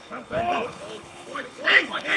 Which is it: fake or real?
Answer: fake